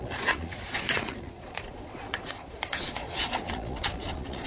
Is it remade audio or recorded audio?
remade